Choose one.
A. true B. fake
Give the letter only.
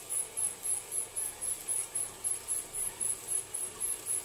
A